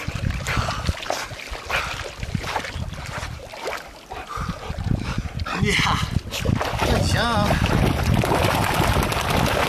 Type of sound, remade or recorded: recorded